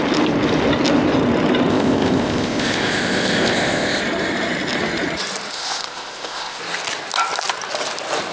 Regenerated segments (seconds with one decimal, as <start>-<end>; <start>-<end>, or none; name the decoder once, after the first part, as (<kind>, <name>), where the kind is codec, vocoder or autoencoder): 1.7-4.0 (codec, ZipCodec); 5.5-6.6